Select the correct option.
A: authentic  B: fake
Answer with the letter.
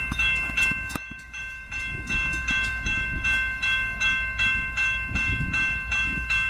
B